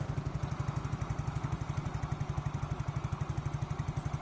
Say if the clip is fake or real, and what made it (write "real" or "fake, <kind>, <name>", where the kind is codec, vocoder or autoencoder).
real